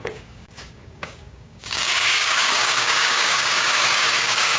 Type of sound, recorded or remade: remade